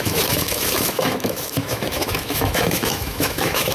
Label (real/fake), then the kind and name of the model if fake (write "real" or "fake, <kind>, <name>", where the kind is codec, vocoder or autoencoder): fake, autoencoder, DAC-VAE